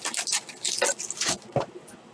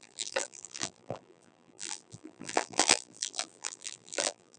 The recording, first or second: first